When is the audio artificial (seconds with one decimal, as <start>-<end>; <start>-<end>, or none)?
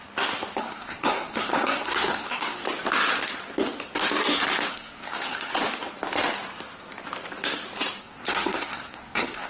0.6-2.6; 4.7-5.5; 8.0-9.5